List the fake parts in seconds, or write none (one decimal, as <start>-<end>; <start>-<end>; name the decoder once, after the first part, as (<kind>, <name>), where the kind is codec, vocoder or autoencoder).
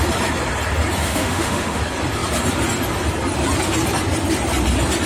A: 1.0-1.8 (autoencoder, DAC-VAE)